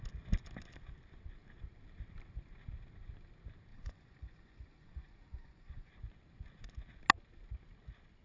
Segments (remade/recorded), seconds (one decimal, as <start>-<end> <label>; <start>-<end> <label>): 0.0-3.7 recorded; 3.7-5.9 remade; 5.9-8.2 recorded